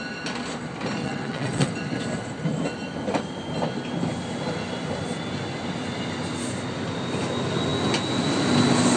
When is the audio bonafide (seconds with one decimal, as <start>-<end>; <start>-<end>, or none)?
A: 0.0-1.0; 1.7-9.0